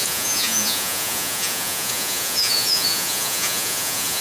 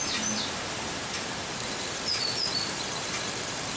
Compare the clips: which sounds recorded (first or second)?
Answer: second